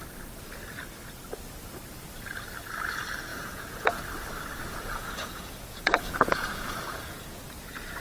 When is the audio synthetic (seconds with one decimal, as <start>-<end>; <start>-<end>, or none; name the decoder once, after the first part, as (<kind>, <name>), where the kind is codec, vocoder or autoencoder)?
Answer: 3.3-4.0 (vocoder, Vocos); 4.6-7.4